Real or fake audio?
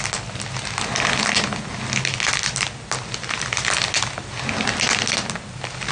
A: real